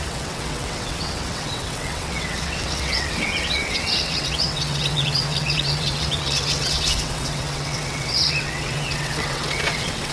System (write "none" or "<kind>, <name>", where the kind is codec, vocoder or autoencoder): vocoder, WaveNeXt